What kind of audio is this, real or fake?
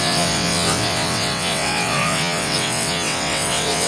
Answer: fake